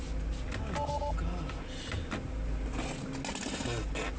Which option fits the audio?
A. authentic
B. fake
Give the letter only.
A